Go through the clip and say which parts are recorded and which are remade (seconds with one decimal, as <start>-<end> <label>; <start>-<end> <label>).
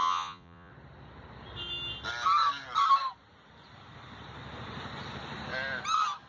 0.0-0.7 remade; 0.7-6.3 recorded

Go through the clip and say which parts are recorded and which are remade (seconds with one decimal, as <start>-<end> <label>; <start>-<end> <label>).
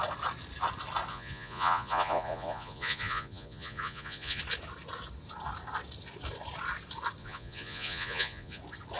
0.0-1.1 recorded; 1.1-4.4 remade; 4.4-7.2 recorded; 7.2-8.6 remade; 8.6-9.0 recorded